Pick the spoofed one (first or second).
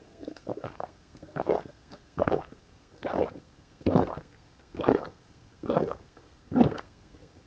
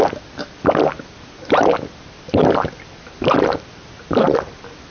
first